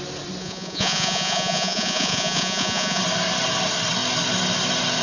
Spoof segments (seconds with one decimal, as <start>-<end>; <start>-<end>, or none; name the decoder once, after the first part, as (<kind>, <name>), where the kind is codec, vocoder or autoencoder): 0.4-3.0 (vocoder, Vocos)